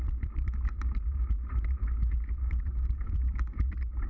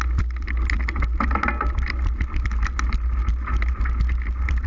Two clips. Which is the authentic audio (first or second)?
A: second